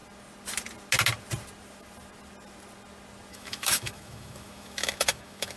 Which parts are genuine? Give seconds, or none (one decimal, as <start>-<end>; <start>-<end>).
0.0-3.3